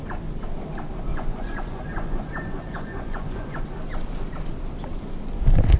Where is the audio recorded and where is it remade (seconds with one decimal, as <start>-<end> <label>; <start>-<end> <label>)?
0.0-1.1 recorded; 1.1-3.6 remade; 3.6-5.8 recorded